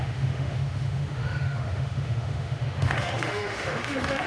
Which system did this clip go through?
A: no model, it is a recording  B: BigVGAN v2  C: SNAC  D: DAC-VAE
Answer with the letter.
D